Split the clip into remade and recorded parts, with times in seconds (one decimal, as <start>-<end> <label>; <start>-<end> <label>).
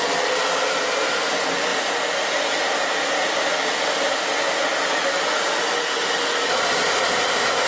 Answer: 0.0-7.7 recorded